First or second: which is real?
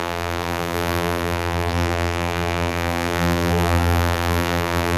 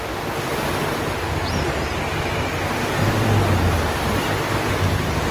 second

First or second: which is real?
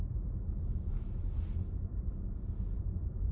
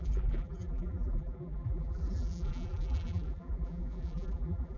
first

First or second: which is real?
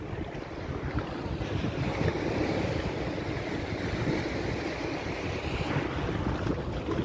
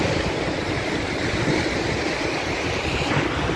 first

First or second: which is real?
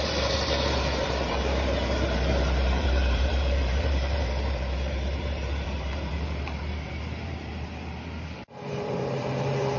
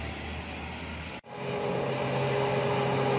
second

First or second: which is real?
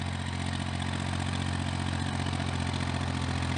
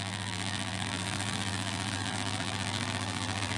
first